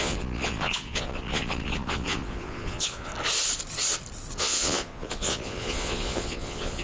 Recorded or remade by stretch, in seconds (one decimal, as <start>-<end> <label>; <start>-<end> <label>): 0.0-3.1 remade; 3.1-4.4 recorded; 4.4-6.8 remade